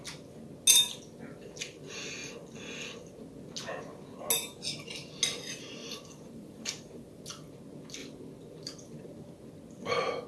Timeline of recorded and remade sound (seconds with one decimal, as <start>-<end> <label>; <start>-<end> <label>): 0.0-5.8 recorded; 5.8-7.2 remade; 7.2-10.3 recorded